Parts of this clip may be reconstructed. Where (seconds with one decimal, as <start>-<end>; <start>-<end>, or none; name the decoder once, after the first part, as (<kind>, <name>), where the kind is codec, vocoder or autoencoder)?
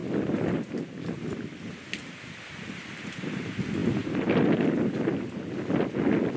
none